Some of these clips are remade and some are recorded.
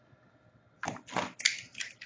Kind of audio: recorded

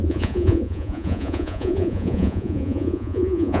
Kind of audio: remade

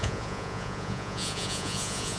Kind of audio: remade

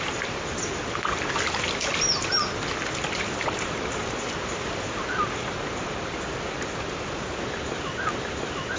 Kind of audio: recorded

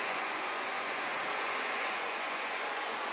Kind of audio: remade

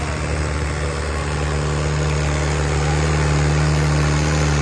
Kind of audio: recorded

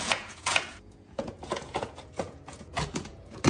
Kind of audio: remade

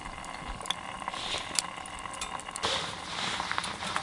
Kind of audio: recorded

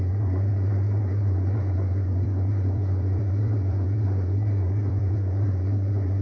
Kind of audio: remade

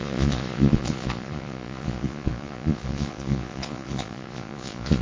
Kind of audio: remade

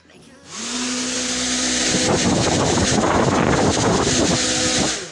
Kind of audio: recorded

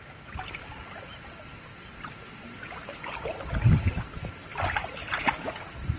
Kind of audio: recorded